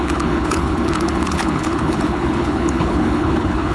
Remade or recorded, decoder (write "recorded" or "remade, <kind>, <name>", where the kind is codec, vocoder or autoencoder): remade, codec, HILCodec